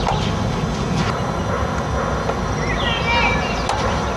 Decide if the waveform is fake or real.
real